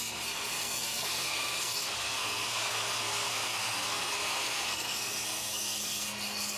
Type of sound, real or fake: fake